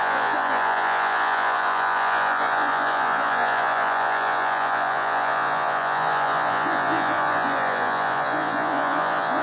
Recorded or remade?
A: remade